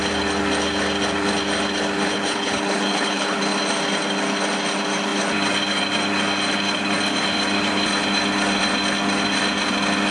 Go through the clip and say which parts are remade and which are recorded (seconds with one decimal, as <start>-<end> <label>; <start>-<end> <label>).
0.0-2.1 recorded; 2.1-3.4 remade; 3.4-10.1 recorded